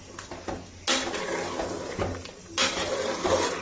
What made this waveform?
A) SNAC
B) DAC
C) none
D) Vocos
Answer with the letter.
C